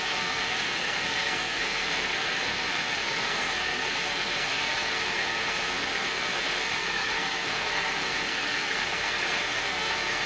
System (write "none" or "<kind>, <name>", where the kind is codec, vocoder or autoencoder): codec, SNAC